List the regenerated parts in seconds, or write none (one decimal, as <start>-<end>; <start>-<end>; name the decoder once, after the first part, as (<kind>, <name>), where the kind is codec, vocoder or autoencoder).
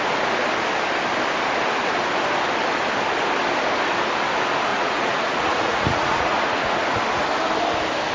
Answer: 4.7-7.0 (vocoder, Vocos)